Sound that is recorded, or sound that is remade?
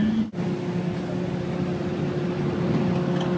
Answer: recorded